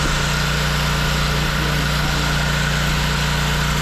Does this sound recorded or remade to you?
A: recorded